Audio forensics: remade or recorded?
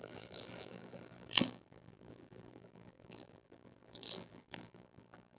remade